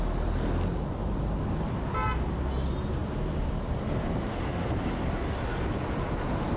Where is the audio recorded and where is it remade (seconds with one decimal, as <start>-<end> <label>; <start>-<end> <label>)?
0.0-6.6 recorded